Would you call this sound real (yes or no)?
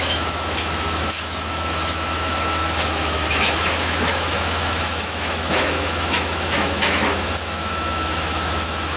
no